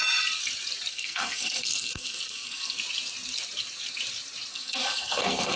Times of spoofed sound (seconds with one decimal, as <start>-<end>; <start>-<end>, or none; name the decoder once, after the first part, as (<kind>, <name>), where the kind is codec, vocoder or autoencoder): 0.9-2.8 (codec, SNAC); 4.5-5.6